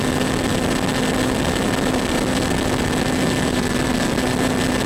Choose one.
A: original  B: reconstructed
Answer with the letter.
A